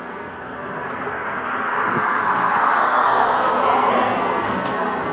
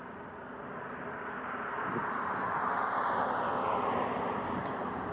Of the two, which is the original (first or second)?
second